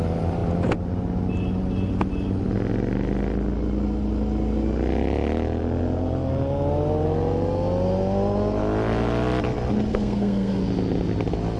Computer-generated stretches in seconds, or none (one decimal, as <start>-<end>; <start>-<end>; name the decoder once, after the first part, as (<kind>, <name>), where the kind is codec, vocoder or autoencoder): 9.9-10.6 (codec, SNAC)